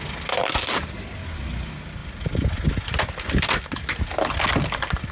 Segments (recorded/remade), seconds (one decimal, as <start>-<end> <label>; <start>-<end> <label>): 0.0-5.1 recorded